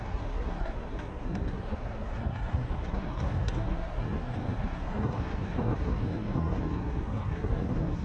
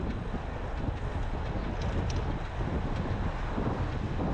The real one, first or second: second